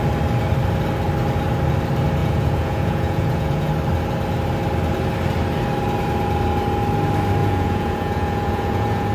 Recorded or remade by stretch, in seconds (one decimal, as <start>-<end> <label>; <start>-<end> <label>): 0.0-2.2 recorded; 2.2-3.7 remade; 3.7-7.4 recorded; 7.4-9.1 remade